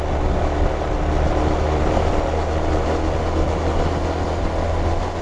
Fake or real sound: real